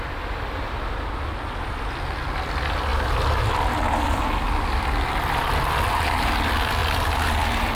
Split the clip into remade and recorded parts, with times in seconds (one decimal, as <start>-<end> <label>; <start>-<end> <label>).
0.0-7.7 recorded